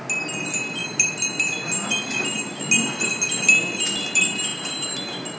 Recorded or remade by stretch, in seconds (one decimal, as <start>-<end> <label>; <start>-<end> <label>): 0.0-5.4 recorded